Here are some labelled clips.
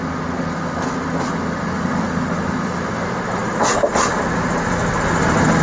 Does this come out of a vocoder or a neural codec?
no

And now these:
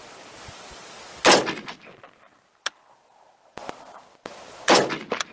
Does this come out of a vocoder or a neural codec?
no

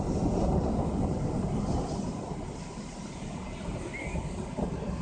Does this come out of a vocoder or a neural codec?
no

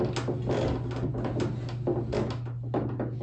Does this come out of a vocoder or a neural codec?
no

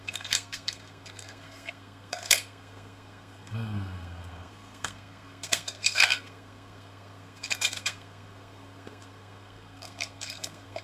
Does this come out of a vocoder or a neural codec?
yes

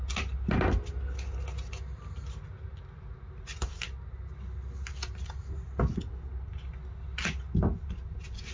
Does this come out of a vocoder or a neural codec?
no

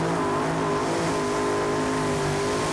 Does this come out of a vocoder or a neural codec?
no